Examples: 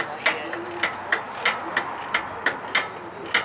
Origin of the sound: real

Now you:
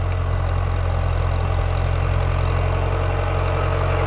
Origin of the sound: real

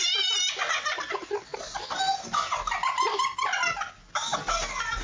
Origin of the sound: real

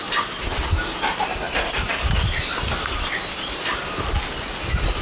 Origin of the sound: real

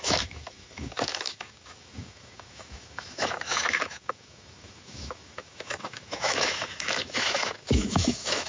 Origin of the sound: fake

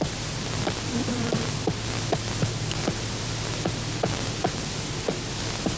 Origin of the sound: real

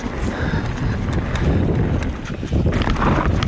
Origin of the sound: real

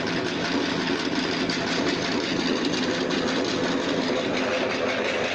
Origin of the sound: real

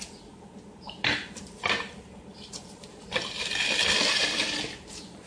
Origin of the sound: real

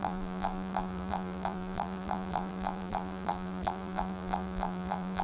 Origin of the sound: fake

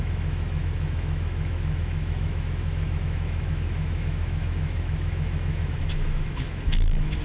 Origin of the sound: fake